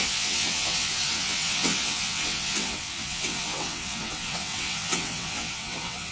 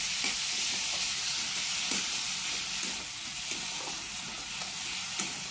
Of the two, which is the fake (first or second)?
first